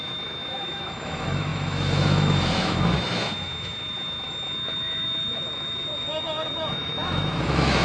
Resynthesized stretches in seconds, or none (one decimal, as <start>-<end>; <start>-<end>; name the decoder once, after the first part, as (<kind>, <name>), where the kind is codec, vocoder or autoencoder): 0.0-7.8 (autoencoder, DAC-VAE)